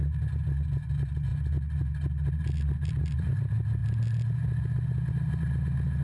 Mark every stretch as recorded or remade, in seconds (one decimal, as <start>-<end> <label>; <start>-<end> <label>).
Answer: 0.0-6.0 recorded